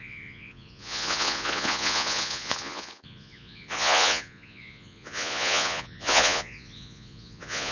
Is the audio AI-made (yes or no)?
yes